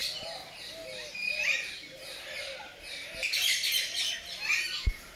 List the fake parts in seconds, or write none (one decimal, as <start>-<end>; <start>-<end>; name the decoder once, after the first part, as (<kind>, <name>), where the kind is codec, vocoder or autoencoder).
none